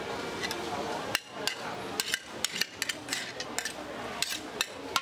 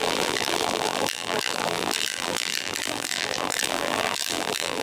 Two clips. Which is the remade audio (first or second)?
second